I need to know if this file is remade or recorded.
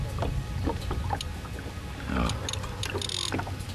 recorded